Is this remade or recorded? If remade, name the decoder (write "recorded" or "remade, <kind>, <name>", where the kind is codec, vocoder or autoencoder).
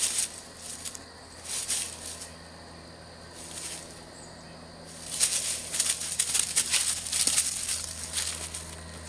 recorded